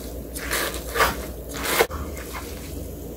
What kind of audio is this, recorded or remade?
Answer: recorded